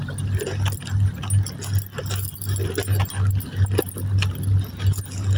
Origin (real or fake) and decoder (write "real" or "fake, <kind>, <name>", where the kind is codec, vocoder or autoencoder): real